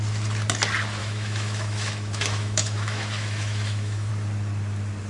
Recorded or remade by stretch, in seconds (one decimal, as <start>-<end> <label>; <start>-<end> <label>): 0.0-1.0 recorded; 1.0-4.1 remade; 4.1-5.1 recorded